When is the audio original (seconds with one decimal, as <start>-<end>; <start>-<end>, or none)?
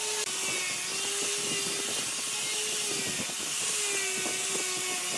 0.0-5.2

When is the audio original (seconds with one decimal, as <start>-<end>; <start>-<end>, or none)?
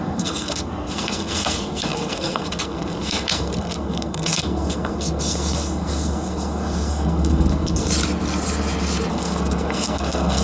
7.9-9.1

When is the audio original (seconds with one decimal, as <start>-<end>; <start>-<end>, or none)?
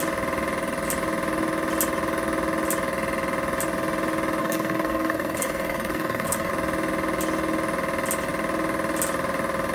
0.0-4.4; 6.5-9.7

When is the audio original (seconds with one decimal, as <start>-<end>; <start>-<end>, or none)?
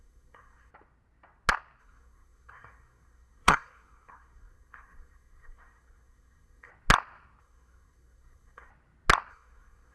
0.7-1.8; 6.7-7.4; 8.7-9.3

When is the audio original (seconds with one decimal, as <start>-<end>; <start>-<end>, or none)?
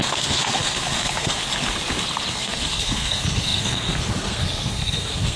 1.4-2.3